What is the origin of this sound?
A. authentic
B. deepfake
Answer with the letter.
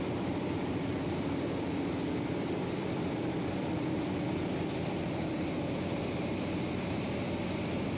B